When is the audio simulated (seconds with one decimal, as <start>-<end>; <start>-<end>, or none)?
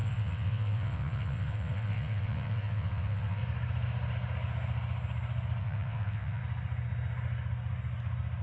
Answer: 0.0-3.4; 5.6-6.4